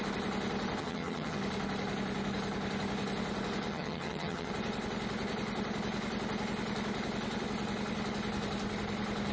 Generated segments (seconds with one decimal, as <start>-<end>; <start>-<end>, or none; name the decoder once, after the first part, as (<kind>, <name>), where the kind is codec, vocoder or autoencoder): 0.8-1.4 (vocoder, HiFi-GAN); 3.7-4.5